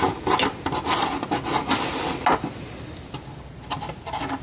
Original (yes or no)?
yes